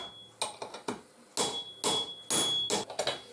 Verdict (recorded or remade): recorded